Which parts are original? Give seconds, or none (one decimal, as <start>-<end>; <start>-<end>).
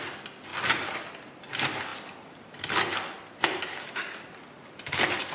0.0-5.3